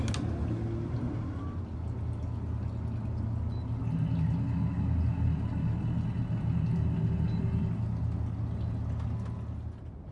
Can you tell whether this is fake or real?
real